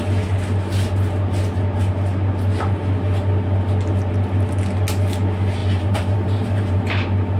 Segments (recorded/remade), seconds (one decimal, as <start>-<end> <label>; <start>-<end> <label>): 0.0-5.6 recorded; 5.6-6.8 remade; 6.8-7.4 recorded